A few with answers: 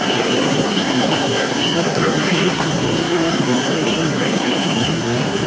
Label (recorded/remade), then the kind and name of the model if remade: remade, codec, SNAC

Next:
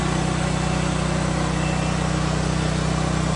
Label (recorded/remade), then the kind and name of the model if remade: recorded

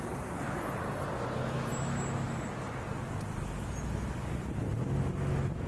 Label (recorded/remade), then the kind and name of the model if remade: recorded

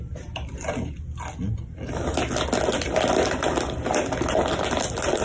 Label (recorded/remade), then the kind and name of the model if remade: recorded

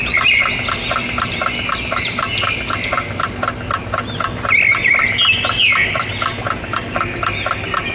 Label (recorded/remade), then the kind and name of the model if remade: recorded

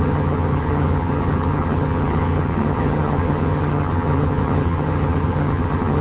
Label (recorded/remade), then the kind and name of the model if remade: remade, vocoder, HiFi-GAN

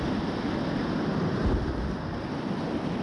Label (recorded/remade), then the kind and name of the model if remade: recorded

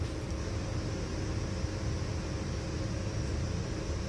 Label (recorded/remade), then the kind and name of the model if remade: recorded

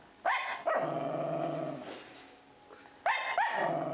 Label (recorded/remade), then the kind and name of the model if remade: recorded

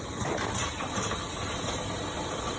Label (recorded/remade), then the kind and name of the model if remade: recorded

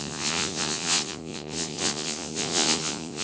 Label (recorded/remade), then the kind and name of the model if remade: remade, vocoder, Vocos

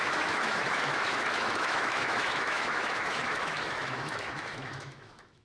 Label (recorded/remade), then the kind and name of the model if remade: remade, autoencoder, DAC-VAE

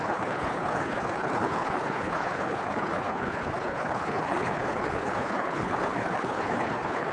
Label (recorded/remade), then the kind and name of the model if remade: remade, codec, HILCodec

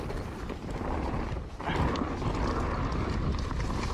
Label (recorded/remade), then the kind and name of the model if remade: recorded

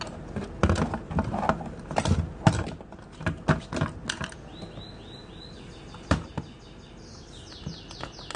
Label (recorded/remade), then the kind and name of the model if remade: recorded